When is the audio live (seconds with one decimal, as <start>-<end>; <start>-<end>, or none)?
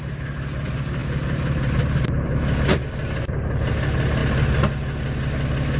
0.0-1.0; 3.7-5.8